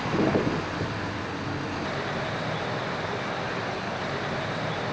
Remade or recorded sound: recorded